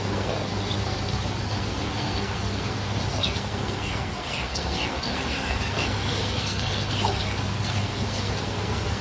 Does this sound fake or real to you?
fake